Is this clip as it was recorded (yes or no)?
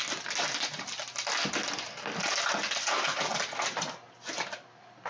yes